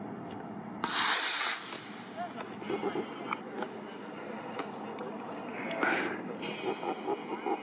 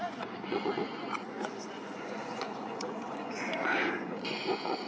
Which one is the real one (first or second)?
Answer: first